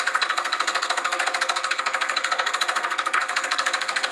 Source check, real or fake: fake